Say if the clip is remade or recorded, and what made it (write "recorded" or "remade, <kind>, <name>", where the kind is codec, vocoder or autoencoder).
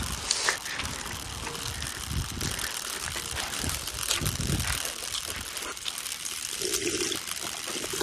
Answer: recorded